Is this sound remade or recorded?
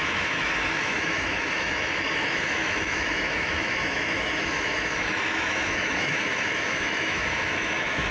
remade